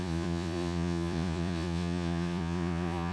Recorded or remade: remade